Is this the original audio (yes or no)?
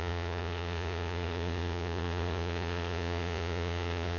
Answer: no